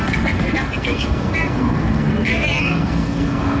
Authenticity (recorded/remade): remade